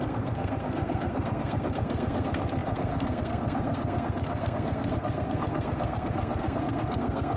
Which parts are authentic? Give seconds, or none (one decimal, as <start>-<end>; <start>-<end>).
none